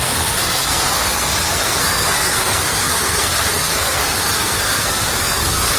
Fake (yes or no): yes